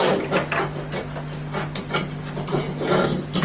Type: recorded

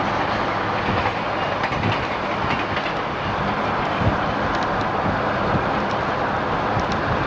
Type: recorded